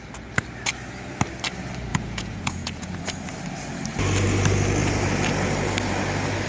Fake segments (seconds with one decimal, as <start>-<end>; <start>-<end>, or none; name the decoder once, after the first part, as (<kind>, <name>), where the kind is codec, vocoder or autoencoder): 1.9-2.9 (vocoder, Vocos)